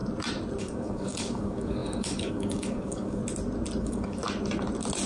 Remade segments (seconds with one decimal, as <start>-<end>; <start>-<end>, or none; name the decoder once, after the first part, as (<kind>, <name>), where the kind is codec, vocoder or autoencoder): 0.6-3.2 (codec, DAC); 3.8-4.2